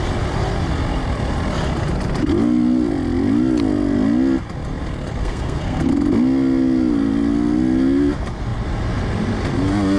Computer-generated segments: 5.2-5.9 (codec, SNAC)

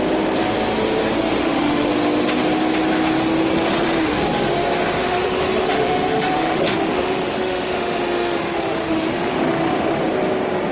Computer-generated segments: 1.4-1.9 (autoencoder, DAC-VAE); 3.5-4.2; 5.0-10.0